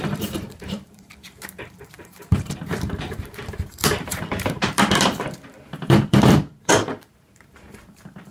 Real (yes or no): no